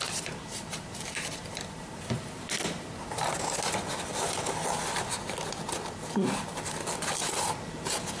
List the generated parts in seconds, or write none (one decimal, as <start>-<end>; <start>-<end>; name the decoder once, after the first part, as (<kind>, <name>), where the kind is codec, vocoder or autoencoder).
0.5-3.2 (vocoder, BigVGAN v2)